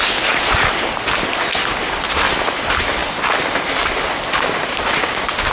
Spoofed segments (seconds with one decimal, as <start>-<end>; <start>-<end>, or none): none